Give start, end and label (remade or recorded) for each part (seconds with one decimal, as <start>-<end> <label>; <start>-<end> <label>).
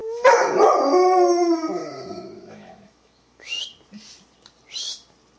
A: 0.0-0.6 remade; 0.6-1.8 recorded; 1.8-3.6 remade; 3.6-5.4 recorded